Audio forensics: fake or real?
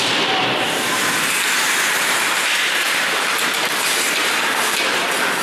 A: real